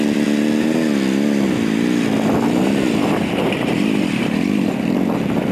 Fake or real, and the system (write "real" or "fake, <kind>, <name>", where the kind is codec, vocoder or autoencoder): real